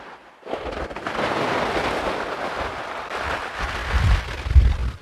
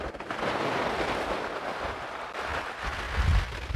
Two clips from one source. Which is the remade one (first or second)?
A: first